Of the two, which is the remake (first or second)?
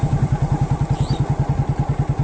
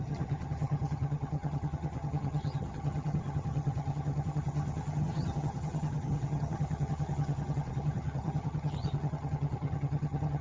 second